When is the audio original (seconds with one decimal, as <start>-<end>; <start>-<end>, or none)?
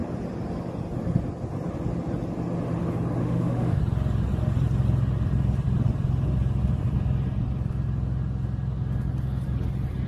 0.0-3.2; 3.8-10.1